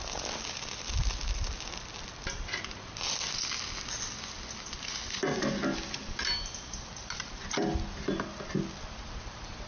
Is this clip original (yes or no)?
yes